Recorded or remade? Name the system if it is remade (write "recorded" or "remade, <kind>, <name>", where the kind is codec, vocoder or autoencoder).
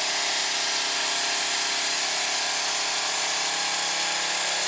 recorded